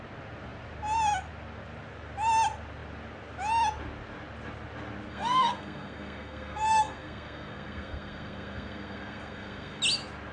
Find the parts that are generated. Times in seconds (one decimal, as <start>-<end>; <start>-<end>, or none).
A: 5.1-9.8

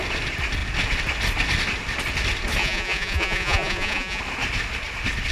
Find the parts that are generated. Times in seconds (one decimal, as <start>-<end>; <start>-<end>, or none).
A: 2.6-4.2